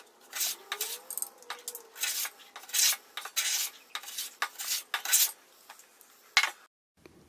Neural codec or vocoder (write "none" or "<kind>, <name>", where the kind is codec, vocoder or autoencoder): none